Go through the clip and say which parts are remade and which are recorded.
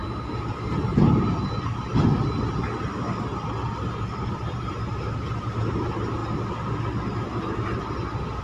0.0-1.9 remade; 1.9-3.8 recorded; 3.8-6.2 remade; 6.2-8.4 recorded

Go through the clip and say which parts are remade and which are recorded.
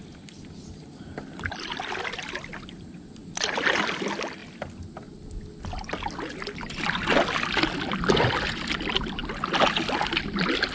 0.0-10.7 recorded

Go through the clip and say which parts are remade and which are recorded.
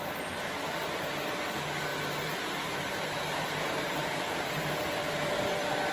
0.0-1.9 recorded; 1.9-5.4 remade; 5.4-5.9 recorded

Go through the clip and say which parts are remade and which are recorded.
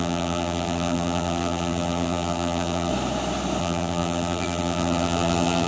0.0-2.9 remade; 2.9-3.6 recorded; 3.6-5.7 remade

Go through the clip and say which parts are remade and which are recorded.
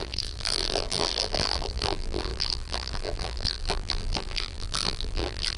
0.0-5.6 remade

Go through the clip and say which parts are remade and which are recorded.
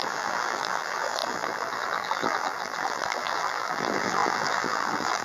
0.0-5.2 remade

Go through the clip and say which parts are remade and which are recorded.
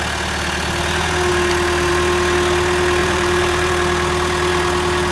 0.0-3.0 recorded; 3.0-3.7 remade; 3.7-5.1 recorded